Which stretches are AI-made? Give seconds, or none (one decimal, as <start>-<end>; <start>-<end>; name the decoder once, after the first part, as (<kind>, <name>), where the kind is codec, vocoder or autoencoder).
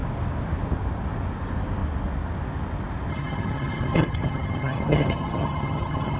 3.1-6.2 (vocoder, HiFi-GAN)